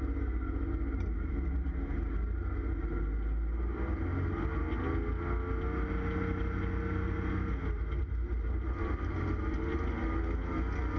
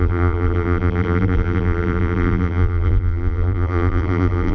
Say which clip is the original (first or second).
first